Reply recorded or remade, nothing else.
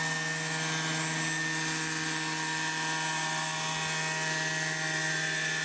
recorded